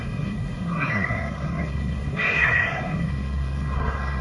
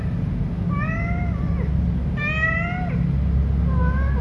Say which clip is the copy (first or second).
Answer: first